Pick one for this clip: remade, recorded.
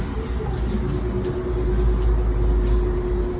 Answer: recorded